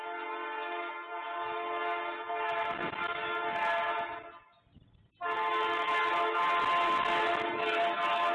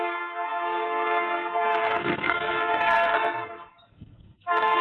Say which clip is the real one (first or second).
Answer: first